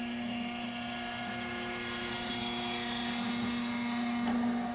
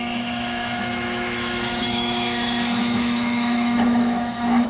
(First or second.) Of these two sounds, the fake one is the second